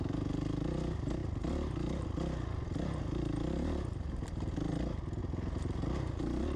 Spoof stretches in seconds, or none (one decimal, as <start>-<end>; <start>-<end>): none